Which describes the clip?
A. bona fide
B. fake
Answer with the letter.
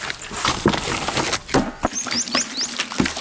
A